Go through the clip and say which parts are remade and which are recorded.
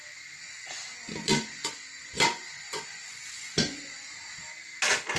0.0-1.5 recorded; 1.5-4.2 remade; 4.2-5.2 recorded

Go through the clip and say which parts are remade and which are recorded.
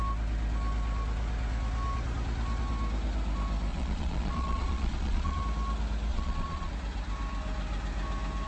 0.0-3.7 recorded; 3.7-5.4 remade; 5.4-6.1 recorded; 6.1-6.7 remade; 6.7-8.5 recorded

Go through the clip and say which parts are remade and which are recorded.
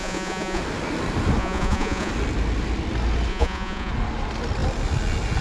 0.0-0.6 remade; 0.6-1.4 recorded; 1.4-2.1 remade; 2.1-3.3 recorded; 3.3-3.9 remade; 3.9-5.4 recorded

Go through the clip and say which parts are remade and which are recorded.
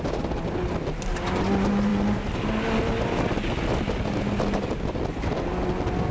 0.0-6.1 recorded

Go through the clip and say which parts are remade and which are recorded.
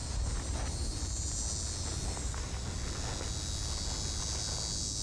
0.0-5.0 recorded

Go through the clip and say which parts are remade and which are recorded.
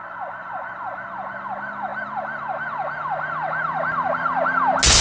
0.0-5.0 recorded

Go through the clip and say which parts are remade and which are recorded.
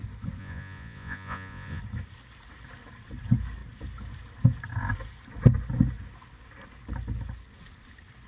0.0-0.4 recorded; 0.4-1.8 remade; 1.8-8.3 recorded